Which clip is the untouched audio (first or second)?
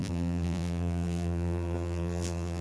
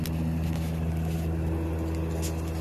second